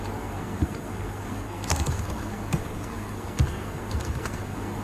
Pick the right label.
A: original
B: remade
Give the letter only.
B